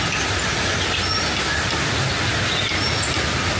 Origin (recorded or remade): recorded